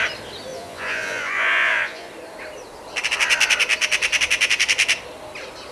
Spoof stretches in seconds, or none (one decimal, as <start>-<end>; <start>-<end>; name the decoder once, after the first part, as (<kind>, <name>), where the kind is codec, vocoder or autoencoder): 0.5-2.1 (vocoder, Vocos)